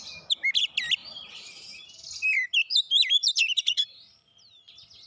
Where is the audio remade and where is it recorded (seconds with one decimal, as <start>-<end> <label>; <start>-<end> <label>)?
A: 0.0-2.7 recorded; 2.7-4.6 remade; 4.6-5.1 recorded